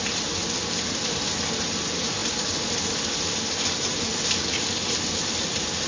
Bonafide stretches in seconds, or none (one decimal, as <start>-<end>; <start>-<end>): 0.0-5.9

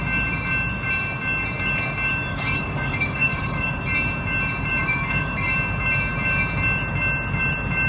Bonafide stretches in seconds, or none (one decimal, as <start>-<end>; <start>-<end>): 0.0-2.3; 3.8-4.8; 5.5-7.9

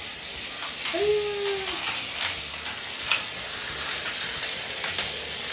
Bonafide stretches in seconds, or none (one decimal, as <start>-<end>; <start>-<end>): 0.0-5.5

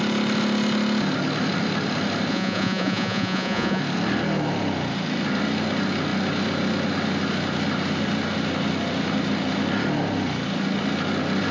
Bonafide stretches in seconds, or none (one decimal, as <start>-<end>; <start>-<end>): 0.0-2.3; 3.8-11.5

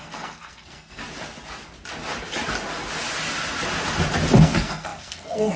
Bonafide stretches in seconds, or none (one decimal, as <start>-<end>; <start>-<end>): 1.0-4.4